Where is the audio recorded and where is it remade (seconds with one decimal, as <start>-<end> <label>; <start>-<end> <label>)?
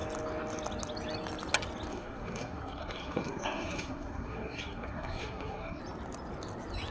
0.0-1.9 recorded; 1.9-5.8 remade; 5.8-6.9 recorded